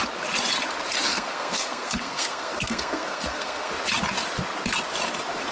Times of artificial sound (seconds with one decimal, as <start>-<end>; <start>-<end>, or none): 1.1-3.7